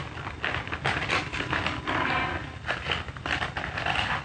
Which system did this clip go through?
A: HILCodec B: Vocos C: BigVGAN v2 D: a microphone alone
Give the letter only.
D